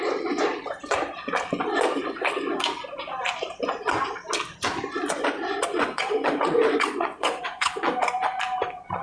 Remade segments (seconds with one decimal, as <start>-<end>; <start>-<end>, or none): 5.7-7.9